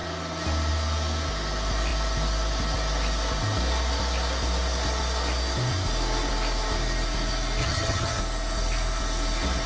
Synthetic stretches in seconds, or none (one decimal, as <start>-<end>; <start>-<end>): 7.6-8.2